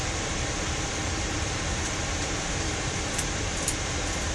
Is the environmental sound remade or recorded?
remade